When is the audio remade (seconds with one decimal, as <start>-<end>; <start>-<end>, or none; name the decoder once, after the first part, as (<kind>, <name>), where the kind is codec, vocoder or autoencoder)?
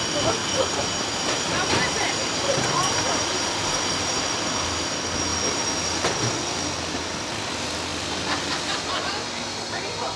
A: 0.4-4.2 (vocoder, BigVGAN v2)